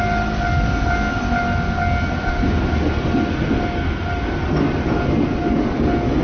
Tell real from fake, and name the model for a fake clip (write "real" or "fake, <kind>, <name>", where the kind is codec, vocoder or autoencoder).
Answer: real